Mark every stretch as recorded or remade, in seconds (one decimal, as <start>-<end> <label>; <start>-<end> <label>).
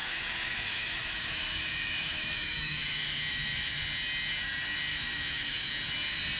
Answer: 0.0-3.8 remade; 3.8-4.9 recorded; 4.9-5.7 remade; 5.7-6.4 recorded